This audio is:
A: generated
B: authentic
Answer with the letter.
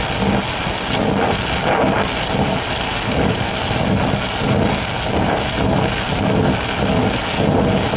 B